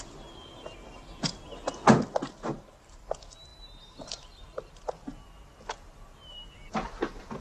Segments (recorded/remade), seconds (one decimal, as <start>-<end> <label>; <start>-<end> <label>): 0.0-3.5 recorded; 3.5-4.1 remade; 4.1-7.4 recorded